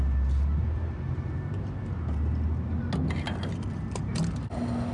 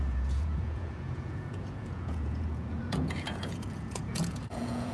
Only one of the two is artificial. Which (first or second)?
second